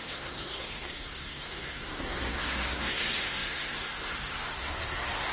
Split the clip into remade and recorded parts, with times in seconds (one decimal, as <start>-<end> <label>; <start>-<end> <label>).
0.0-5.3 remade